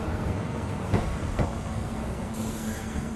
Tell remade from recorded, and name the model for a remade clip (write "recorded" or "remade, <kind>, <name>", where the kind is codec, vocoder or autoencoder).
remade, codec, SNAC